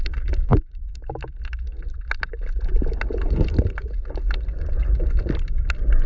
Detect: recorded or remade recorded